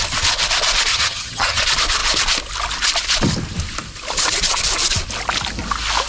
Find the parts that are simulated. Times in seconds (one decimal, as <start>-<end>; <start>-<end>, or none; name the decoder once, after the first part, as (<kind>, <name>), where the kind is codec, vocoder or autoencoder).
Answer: 0.9-1.6 (vocoder, HiFi-GAN)